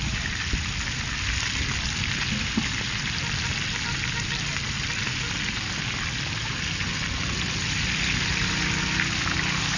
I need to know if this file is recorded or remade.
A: recorded